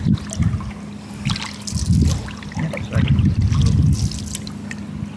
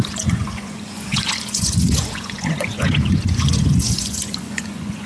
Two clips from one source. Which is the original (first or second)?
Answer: first